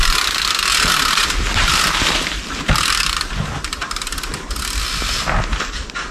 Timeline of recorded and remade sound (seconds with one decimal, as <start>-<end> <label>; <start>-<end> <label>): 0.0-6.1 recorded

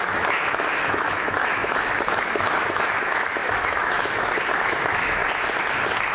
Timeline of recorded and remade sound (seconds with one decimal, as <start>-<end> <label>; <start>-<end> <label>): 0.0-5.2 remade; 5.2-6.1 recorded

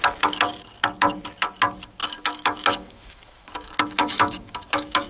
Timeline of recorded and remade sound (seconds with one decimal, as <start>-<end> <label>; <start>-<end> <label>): 0.0-2.0 recorded; 2.0-5.1 remade